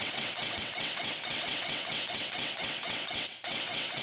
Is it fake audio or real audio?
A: fake